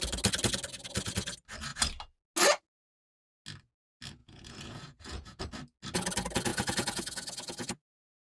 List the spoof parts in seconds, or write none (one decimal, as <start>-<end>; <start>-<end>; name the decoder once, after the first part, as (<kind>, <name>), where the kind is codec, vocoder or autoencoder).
4.2-5.4 (vocoder, Vocos); 6.5-8.3